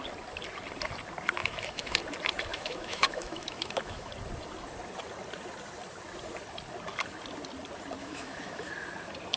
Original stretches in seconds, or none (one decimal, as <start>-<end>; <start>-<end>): 0.0-1.4; 2.0-2.5; 4.1-8.0; 8.7-9.4